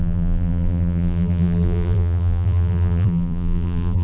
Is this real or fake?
fake